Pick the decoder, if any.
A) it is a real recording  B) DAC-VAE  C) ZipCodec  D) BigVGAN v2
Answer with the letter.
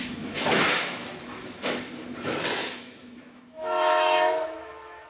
B